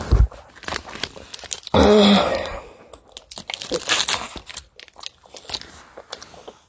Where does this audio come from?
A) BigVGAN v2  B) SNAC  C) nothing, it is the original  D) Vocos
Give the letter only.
C